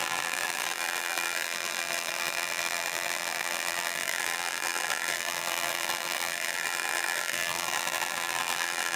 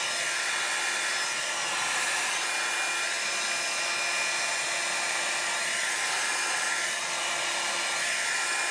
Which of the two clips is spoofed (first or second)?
first